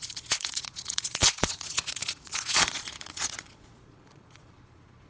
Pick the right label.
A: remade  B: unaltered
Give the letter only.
A